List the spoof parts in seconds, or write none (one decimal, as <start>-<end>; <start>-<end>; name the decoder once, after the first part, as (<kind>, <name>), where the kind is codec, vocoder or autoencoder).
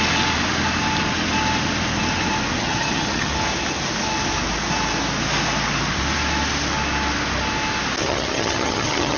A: 2.6-3.3 (vocoder, HiFi-GAN); 8.0-9.2